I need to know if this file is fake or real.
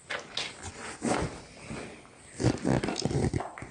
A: real